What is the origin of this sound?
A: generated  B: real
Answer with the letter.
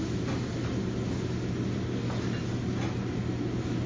B